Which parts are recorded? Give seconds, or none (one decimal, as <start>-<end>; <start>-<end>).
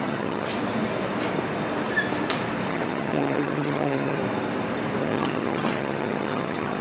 0.5-2.7; 4.2-5.0